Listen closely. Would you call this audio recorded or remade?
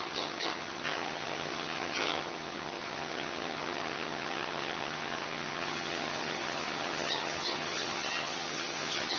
remade